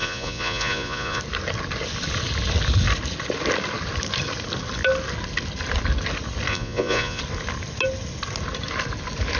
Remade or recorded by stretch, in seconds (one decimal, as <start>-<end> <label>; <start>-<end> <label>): 0.0-1.2 remade; 1.2-6.5 recorded; 6.5-7.2 remade; 7.2-9.4 recorded